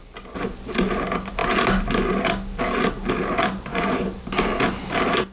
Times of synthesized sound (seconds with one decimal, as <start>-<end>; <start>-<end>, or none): 3.7-4.2